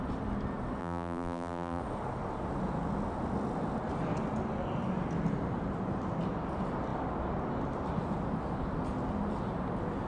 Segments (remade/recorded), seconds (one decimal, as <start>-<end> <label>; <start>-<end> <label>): 0.0-0.8 recorded; 0.8-1.8 remade; 1.8-10.1 recorded